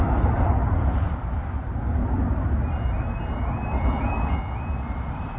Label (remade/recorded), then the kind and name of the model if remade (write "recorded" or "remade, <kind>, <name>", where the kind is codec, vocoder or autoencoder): recorded